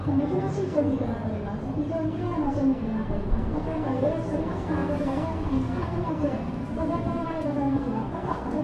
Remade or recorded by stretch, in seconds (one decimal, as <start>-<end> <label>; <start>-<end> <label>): 0.0-0.9 remade; 0.9-2.0 recorded; 2.0-8.6 remade